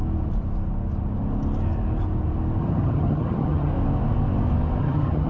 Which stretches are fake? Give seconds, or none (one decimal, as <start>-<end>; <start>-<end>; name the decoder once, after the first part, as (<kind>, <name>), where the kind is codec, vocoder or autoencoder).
2.6-3.7 (vocoder, HiFi-GAN); 4.8-5.3